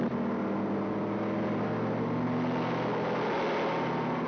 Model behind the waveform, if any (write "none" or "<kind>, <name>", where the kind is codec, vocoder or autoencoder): none